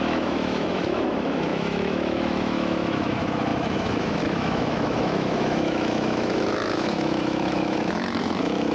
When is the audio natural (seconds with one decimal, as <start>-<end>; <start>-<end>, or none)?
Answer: none